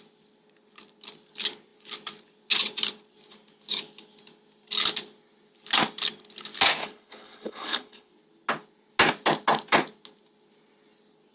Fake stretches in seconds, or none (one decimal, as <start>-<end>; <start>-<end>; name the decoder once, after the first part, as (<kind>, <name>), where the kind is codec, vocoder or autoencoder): 6.8-8.1 (codec, HILCodec)